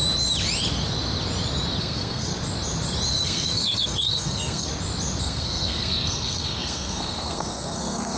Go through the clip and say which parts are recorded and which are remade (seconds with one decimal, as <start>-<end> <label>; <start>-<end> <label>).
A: 0.0-1.8 recorded; 1.8-2.3 remade; 2.3-3.1 recorded; 3.1-4.7 remade; 4.7-5.2 recorded; 5.2-8.2 remade